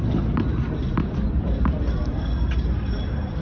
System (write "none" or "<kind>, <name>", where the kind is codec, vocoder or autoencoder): none